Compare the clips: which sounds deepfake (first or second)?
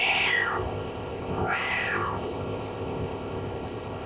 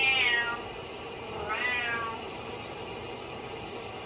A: first